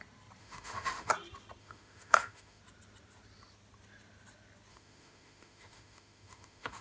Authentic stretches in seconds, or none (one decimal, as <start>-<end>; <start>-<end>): 0.0-0.4; 1.1-1.6; 2.6-4.7